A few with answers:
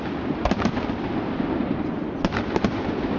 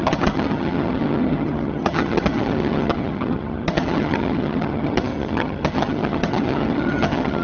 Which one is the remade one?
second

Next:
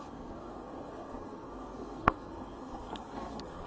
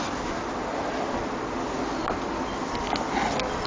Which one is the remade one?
first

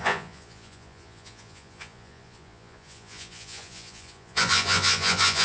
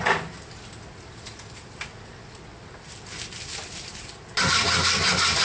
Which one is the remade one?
first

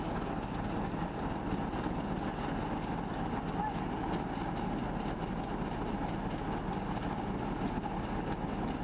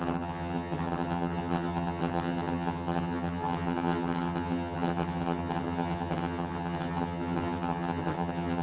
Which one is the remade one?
second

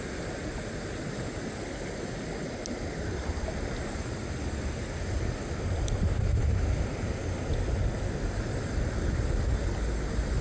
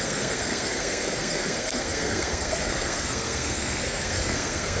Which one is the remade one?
second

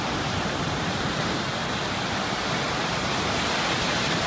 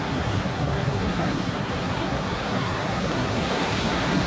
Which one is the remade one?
second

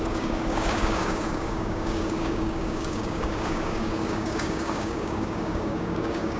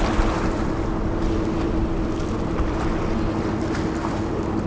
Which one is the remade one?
first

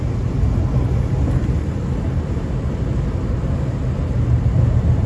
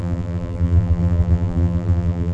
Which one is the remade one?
second